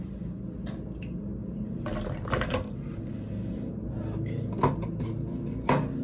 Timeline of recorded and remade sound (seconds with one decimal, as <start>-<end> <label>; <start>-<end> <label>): 0.0-6.0 recorded